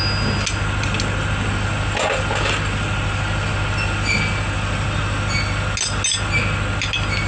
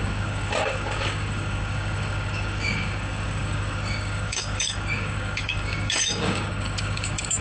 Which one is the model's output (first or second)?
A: second